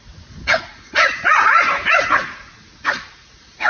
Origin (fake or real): fake